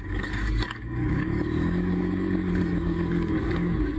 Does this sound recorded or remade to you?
remade